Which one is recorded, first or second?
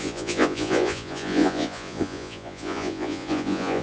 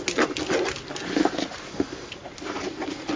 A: second